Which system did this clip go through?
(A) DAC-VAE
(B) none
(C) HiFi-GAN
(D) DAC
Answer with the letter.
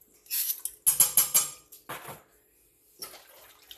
B